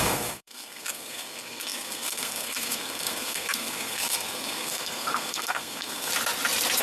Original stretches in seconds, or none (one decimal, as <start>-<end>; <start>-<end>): 6.1-6.8